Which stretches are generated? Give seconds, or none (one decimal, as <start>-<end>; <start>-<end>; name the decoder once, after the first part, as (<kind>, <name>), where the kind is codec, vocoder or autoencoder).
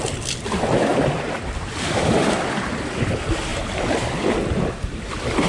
0.0-0.9 (vocoder, BigVGAN v2); 1.4-3.5; 4.6-5.5